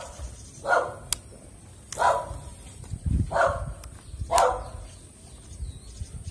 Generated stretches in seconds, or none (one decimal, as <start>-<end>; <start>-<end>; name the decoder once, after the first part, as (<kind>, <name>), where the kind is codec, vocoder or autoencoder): none